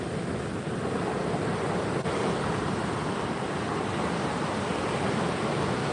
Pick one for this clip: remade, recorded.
recorded